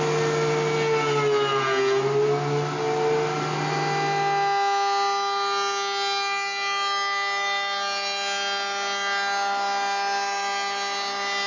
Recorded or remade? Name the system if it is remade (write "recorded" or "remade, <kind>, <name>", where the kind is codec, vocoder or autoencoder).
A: recorded